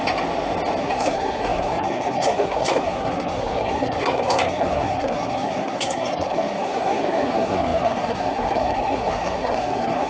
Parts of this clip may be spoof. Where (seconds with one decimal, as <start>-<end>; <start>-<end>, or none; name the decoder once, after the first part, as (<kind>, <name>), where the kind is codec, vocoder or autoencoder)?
0.8-10.1 (codec, SNAC)